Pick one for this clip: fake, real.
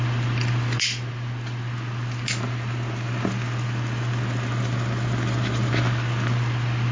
real